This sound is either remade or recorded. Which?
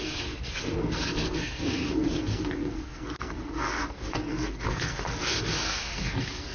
remade